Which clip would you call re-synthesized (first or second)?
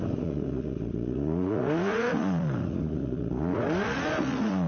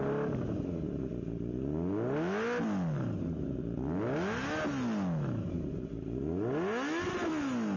first